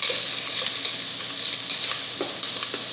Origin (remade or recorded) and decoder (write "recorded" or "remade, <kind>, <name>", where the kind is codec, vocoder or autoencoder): recorded